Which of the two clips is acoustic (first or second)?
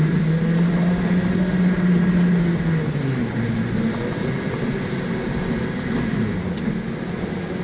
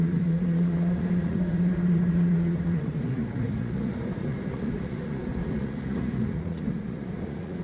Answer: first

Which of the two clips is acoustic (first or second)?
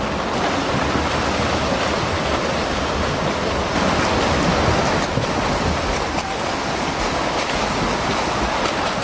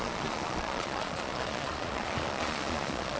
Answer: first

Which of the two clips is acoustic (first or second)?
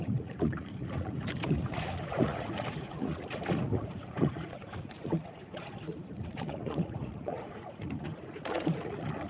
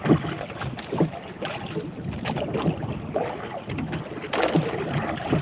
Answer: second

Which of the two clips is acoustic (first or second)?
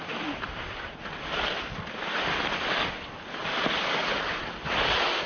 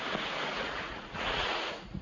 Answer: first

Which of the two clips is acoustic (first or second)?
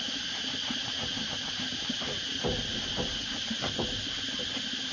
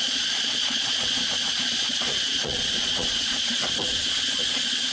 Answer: first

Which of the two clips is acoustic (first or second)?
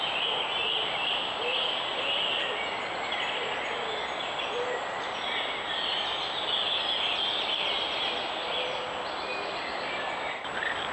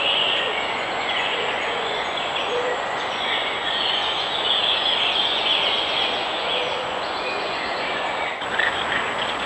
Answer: first